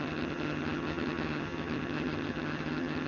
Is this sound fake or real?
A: fake